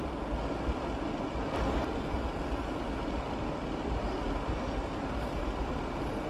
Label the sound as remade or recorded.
recorded